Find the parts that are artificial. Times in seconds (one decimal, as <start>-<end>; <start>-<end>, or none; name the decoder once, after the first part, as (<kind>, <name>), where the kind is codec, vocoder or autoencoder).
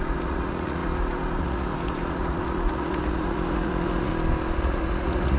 0.0-4.1 (vocoder, Vocos); 4.6-5.4